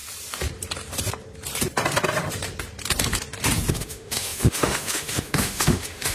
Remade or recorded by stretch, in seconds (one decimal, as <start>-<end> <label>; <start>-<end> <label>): 0.0-3.7 recorded; 3.7-6.1 remade